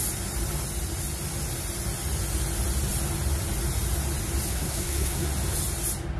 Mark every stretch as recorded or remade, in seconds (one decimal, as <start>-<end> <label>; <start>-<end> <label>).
0.0-4.5 recorded; 4.5-5.3 remade; 5.3-6.2 recorded